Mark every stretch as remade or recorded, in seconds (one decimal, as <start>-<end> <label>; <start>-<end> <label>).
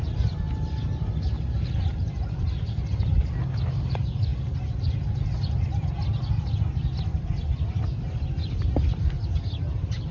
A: 0.0-10.1 recorded